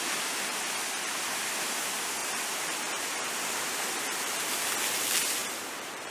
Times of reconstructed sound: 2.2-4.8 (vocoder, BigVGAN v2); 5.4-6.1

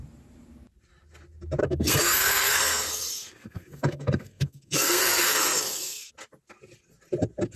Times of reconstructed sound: 1.6-6.1 (codec, SNAC)